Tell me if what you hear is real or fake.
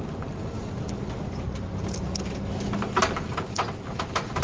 real